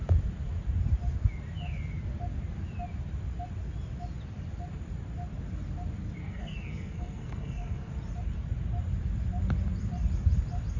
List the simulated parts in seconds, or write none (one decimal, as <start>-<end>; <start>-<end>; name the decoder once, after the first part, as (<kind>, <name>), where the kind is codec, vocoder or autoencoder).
6.2-7.9 (codec, SNAC)